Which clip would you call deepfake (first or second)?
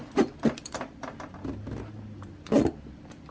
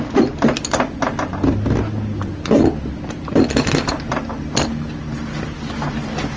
first